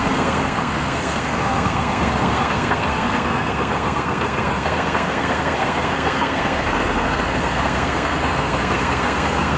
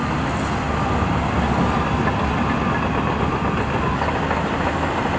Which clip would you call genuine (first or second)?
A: second